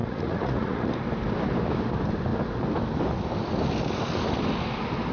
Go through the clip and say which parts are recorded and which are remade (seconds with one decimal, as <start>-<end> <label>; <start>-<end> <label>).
0.0-0.9 remade; 0.9-5.1 recorded